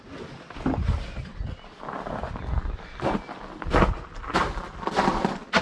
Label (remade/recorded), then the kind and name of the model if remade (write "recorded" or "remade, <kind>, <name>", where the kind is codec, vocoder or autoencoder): recorded